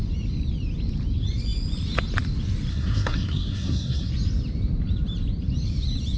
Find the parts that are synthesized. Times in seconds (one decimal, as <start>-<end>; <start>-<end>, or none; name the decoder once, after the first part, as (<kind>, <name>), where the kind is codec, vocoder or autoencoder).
2.7-4.1 (codec, SNAC)